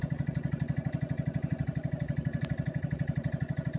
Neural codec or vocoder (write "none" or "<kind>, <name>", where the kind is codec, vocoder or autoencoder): none